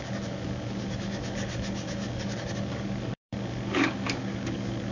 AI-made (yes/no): yes